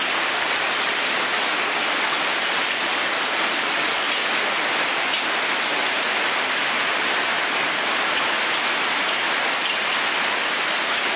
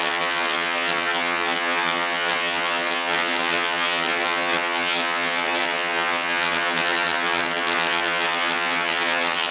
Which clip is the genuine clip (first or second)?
first